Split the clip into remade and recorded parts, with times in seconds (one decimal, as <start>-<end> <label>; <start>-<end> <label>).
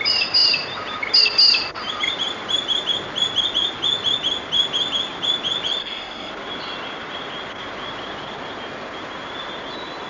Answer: 0.0-5.8 recorded; 5.8-6.3 remade; 6.3-10.1 recorded